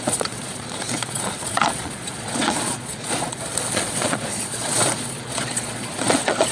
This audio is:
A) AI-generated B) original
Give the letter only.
A